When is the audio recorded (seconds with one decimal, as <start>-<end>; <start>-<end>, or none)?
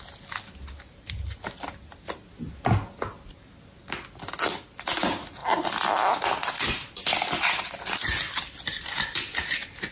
0.0-9.9